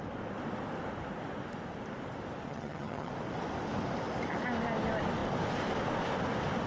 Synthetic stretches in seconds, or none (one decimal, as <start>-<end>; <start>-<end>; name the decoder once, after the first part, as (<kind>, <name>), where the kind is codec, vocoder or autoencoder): 2.5-3.1 (vocoder, HiFi-GAN)